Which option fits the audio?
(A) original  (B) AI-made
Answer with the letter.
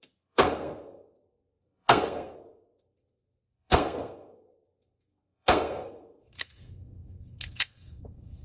B